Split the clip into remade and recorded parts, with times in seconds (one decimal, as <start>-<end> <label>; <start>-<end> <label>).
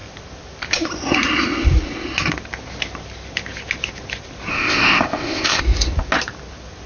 0.0-4.5 recorded; 4.5-5.6 remade; 5.6-6.9 recorded